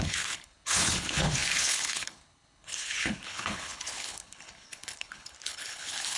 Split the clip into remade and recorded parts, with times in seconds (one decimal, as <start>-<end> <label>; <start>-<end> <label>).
0.0-6.2 remade